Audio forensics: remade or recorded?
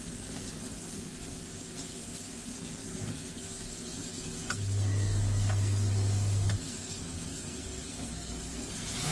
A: remade